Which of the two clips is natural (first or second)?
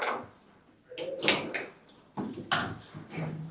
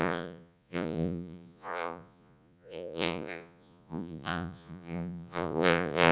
first